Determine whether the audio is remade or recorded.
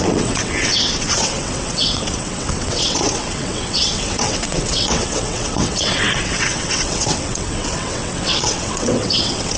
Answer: remade